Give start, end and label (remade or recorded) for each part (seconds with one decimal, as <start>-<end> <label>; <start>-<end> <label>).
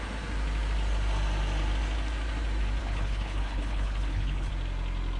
0.0-2.8 recorded; 2.8-4.5 remade; 4.5-5.2 recorded